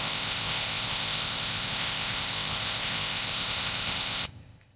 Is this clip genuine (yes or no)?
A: no